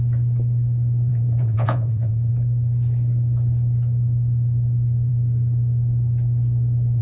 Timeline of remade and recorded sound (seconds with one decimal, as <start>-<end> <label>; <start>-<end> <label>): 0.0-1.1 recorded; 1.1-2.3 remade; 2.3-7.0 recorded